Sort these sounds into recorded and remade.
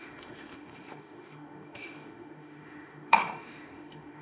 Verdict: remade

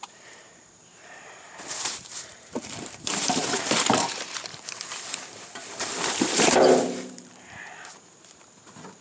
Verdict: remade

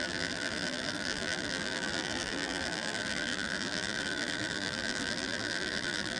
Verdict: remade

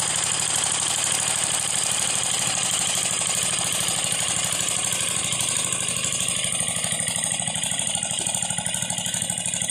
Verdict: recorded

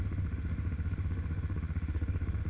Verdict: remade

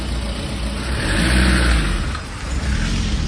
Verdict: recorded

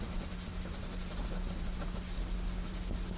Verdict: remade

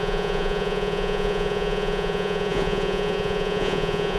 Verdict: remade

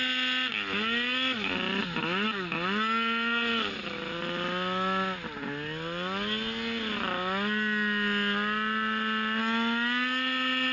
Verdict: recorded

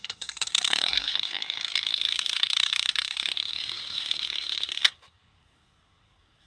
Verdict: remade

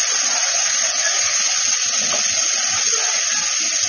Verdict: recorded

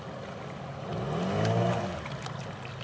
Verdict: recorded